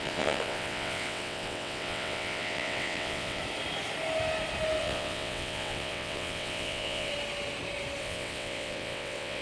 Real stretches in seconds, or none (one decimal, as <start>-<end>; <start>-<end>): 3.4-4.8; 7.1-8.0